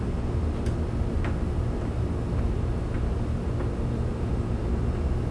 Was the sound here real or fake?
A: real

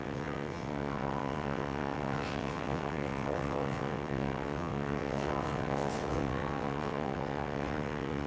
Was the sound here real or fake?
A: fake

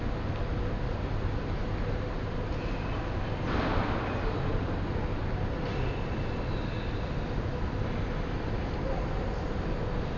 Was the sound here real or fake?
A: real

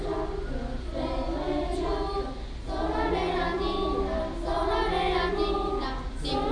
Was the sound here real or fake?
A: real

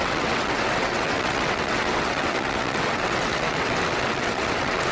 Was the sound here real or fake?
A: fake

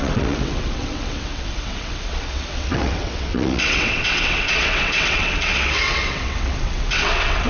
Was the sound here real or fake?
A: fake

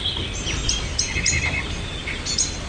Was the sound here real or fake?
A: real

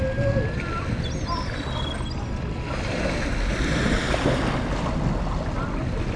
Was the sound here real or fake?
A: real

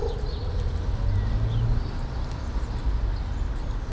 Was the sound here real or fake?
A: real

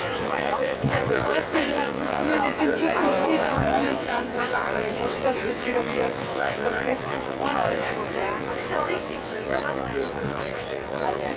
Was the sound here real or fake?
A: fake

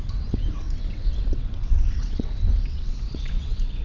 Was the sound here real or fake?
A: fake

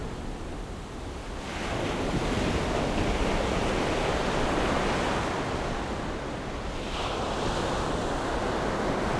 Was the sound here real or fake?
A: real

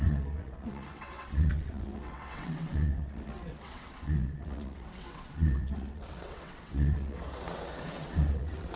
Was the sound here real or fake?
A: fake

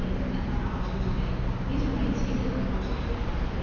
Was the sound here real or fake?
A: real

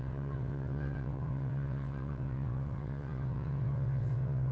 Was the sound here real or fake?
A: fake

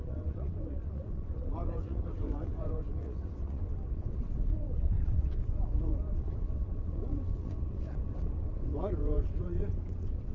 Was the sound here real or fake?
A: fake